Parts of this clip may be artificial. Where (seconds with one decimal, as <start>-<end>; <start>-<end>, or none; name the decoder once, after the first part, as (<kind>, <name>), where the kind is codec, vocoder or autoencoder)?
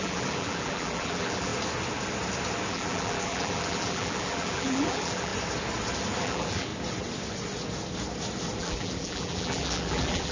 0.0-1.5 (vocoder, BigVGAN v2); 2.7-5.3; 6.2-6.7; 8.6-10.3